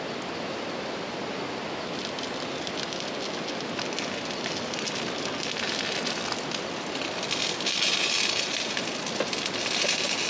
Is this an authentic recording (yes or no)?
yes